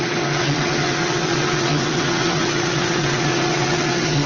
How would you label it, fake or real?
fake